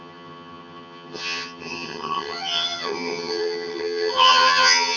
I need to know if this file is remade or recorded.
remade